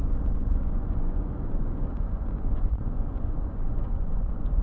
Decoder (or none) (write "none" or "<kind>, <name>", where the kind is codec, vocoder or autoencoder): vocoder, Vocos